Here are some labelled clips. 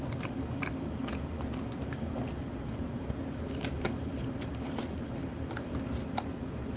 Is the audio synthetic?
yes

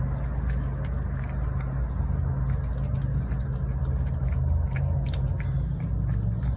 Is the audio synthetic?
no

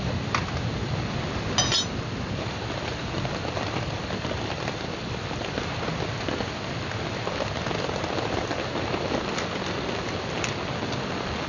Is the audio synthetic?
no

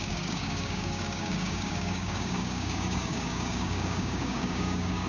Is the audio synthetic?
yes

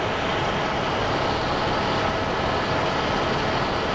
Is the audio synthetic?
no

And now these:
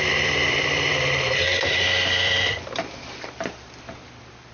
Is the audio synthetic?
yes